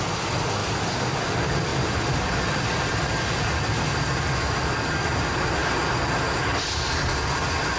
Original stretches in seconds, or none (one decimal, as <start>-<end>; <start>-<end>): 0.0-7.8